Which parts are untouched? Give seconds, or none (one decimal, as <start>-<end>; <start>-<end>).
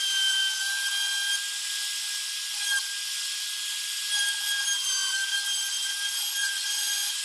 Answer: 0.0-6.4